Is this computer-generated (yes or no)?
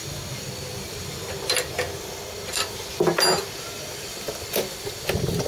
no